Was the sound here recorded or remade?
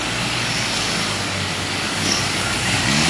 remade